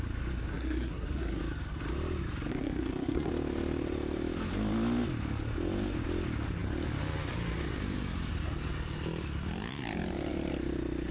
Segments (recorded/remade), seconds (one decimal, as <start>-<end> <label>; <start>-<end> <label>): 0.0-0.5 recorded; 0.5-1.4 remade; 1.4-2.5 recorded; 2.5-3.3 remade; 3.3-11.1 recorded